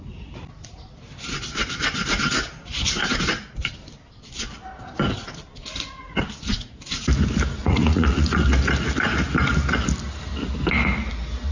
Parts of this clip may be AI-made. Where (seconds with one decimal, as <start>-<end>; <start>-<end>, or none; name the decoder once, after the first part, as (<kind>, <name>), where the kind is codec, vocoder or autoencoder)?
5.7-6.2 (vocoder, Vocos); 7.6-8.4